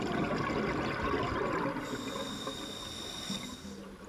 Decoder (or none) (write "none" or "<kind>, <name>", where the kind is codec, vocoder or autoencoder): none